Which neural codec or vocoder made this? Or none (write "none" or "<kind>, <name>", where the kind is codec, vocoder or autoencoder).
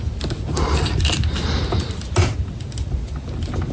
none